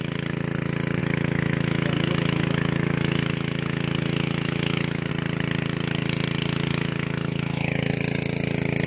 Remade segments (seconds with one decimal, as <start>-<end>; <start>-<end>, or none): 1.0-5.1; 6.7-7.9